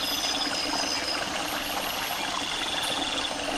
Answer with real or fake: real